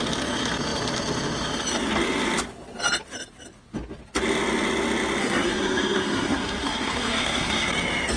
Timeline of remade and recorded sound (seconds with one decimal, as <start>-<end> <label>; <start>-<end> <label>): 0.0-5.2 recorded; 5.2-7.7 remade; 7.7-8.2 recorded